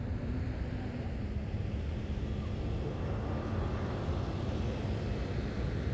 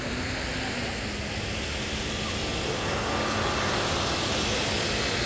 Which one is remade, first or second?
first